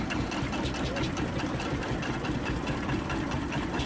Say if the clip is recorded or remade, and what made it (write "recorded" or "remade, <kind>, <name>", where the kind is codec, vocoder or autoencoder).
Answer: recorded